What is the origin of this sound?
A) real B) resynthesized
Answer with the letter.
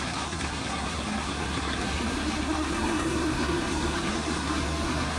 B